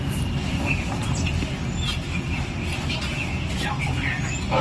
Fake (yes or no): no